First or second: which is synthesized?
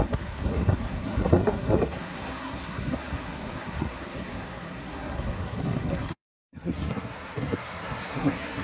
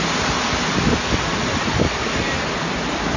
first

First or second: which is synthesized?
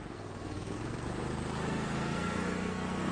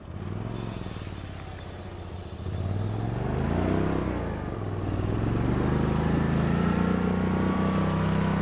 first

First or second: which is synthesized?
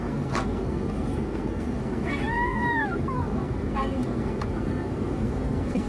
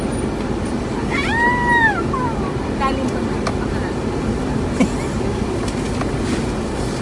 first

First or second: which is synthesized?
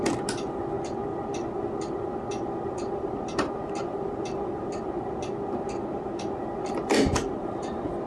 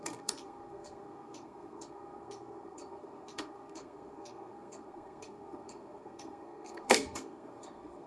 second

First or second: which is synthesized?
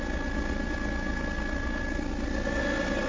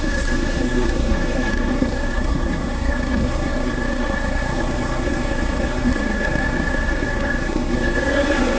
second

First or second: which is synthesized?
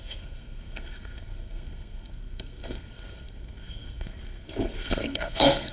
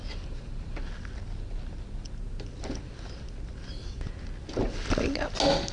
first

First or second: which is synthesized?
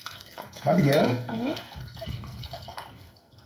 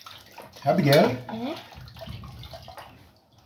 first